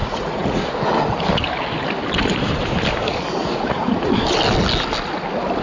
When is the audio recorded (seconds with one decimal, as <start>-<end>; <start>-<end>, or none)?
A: 0.7-3.4; 4.1-5.6